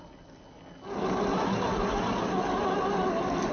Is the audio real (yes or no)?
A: yes